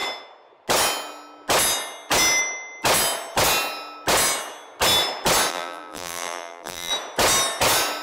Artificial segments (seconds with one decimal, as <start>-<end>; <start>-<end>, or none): 5.5-6.9